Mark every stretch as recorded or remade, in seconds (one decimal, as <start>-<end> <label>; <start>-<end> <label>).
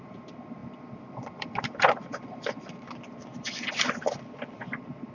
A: 0.0-5.1 remade